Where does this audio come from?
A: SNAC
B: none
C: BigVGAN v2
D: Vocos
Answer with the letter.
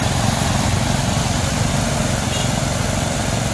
B